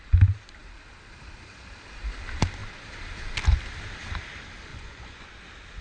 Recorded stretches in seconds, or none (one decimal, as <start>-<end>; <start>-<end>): 0.0-4.7; 5.3-5.8